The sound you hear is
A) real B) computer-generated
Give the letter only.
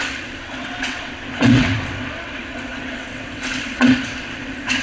B